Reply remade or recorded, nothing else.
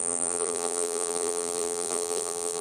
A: remade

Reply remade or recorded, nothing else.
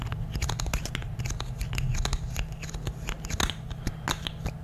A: recorded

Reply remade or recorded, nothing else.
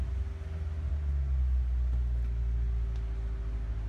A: recorded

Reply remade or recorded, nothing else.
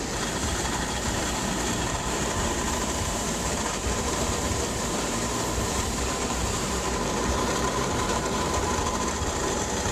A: remade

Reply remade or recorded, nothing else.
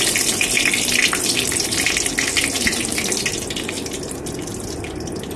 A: recorded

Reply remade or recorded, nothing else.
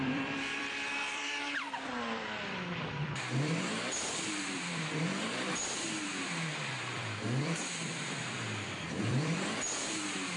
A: remade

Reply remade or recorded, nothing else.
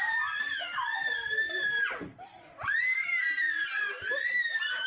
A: recorded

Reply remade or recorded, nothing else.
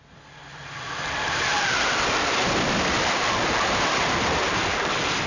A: remade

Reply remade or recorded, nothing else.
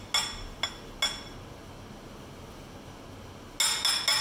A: recorded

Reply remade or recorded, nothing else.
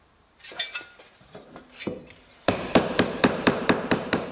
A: remade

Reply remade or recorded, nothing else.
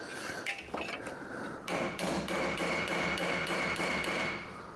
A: remade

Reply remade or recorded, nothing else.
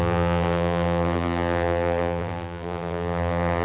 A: remade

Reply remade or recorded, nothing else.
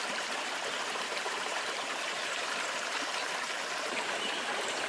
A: remade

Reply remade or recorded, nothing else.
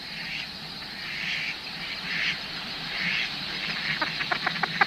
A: recorded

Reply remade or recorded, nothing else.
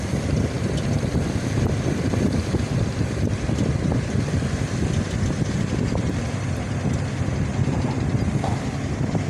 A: recorded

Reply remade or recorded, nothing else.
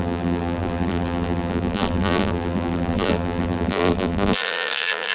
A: remade